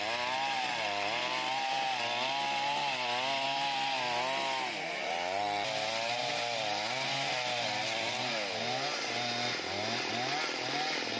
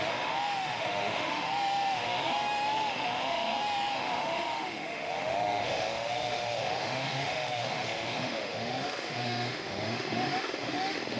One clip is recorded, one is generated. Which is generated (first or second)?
second